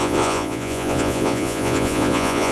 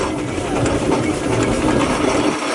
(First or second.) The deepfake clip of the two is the first